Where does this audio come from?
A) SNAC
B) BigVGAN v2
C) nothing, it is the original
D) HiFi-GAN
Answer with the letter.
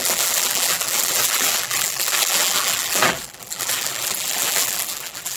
B